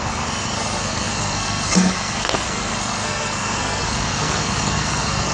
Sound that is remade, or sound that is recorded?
remade